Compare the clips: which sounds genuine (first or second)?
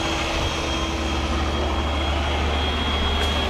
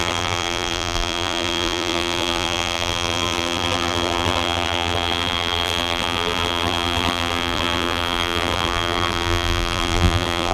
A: first